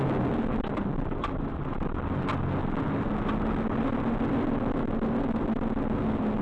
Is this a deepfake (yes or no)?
no